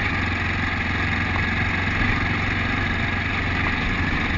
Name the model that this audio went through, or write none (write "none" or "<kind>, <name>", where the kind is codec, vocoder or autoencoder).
none